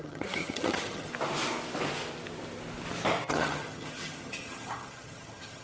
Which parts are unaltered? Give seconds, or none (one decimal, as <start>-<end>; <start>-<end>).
1.1-3.3